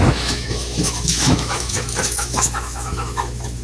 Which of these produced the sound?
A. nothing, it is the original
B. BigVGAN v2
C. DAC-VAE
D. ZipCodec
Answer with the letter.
C